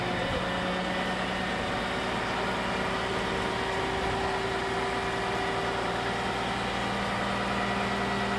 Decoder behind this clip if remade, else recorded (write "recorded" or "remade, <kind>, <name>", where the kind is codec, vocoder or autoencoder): recorded